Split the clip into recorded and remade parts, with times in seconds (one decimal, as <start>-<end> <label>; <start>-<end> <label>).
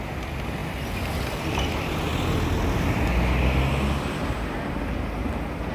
0.0-5.7 recorded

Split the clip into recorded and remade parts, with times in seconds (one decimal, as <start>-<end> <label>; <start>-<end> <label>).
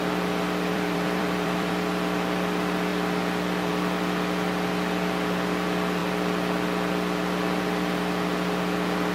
0.0-0.7 recorded; 0.7-1.7 remade; 1.7-9.1 recorded